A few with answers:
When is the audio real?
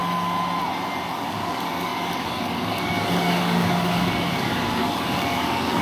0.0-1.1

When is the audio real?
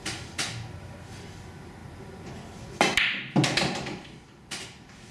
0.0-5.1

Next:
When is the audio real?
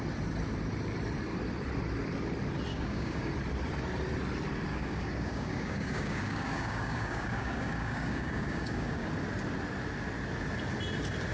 0.0-2.7; 3.3-4.7; 9.1-11.3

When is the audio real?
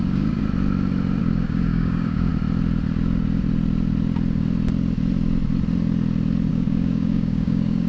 0.4-1.2; 2.3-6.5